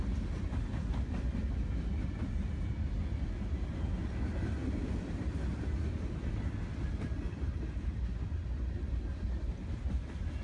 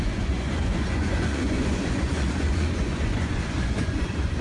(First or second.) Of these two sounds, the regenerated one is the second